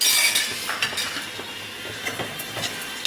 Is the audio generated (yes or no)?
no